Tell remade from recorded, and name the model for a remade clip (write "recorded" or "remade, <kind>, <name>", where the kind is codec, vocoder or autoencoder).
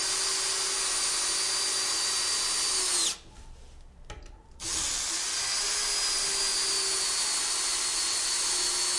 recorded